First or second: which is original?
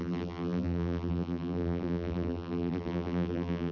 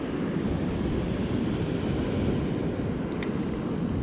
second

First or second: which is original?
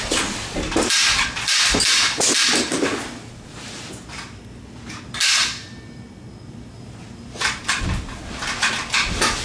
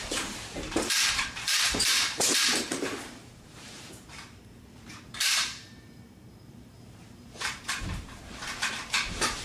first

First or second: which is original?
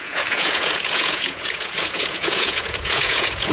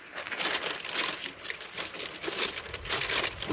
second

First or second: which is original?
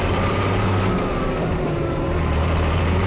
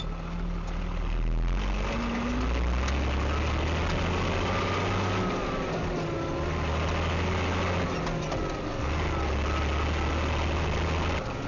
second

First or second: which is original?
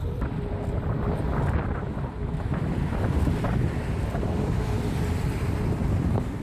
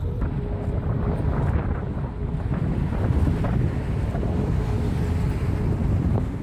second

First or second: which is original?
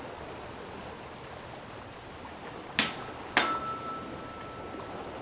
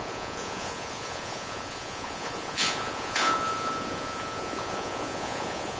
first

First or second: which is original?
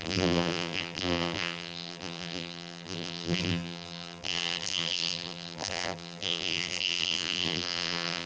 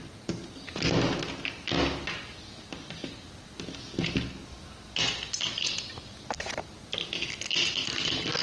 second